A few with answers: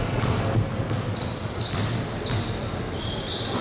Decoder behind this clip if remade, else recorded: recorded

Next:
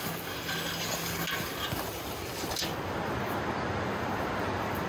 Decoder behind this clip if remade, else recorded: recorded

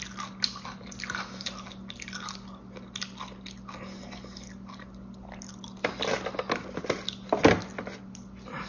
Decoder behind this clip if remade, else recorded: recorded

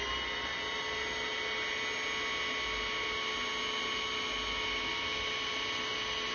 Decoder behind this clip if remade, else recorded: recorded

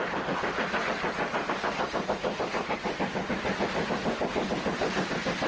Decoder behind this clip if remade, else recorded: recorded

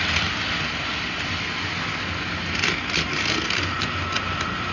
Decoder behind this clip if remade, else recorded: recorded